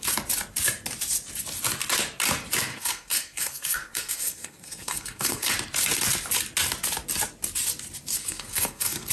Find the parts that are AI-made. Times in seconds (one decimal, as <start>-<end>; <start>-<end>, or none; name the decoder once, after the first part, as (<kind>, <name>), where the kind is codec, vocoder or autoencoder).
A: 2.7-5.5 (codec, SNAC); 8.1-9.1